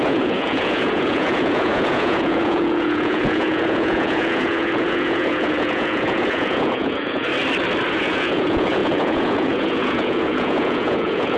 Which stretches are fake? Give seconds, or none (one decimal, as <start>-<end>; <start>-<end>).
0.0-7.3; 7.9-11.4